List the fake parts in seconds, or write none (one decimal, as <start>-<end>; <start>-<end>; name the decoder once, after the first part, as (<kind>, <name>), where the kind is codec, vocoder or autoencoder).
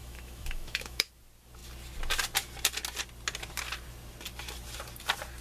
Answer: 0.0-1.1 (autoencoder, DAC-VAE)